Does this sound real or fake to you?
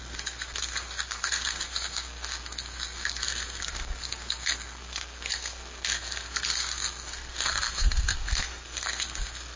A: fake